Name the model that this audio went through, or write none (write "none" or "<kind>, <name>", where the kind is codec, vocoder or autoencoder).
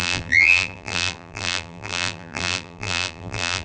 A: vocoder, BigVGAN v2